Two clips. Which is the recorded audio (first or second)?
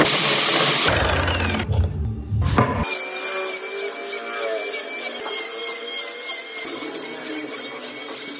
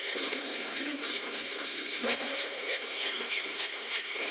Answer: first